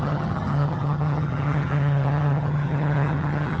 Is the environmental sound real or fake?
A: fake